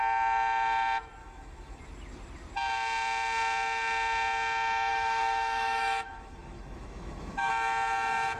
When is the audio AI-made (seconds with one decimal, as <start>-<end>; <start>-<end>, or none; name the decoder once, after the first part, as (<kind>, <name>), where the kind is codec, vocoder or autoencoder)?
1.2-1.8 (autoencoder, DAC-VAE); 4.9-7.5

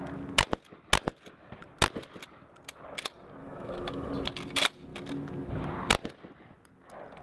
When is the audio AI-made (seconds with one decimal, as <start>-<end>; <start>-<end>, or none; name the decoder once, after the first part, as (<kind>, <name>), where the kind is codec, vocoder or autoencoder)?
3.4-4.1 (autoencoder, DAC-VAE)

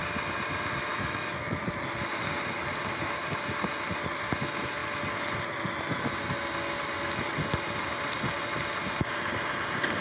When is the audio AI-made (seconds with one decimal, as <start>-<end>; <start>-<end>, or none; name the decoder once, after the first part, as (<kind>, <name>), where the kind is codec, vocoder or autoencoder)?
0.9-1.6 (autoencoder, DAC-VAE)